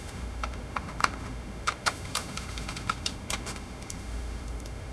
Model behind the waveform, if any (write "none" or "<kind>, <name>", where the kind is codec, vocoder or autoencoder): autoencoder, DAC-VAE